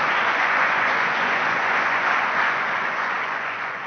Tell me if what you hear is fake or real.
fake